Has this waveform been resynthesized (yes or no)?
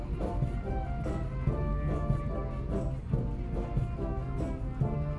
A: no